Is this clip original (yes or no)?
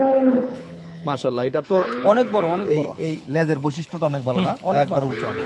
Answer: no